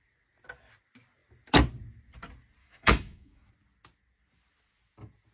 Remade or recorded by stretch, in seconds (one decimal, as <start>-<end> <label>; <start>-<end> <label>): 0.0-2.6 recorded; 2.6-3.5 remade; 3.5-5.3 recorded